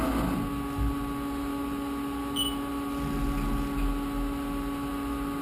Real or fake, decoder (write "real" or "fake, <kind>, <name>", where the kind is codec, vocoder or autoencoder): real